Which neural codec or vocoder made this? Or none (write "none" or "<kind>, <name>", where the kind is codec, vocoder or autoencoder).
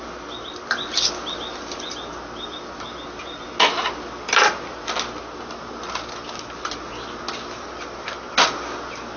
none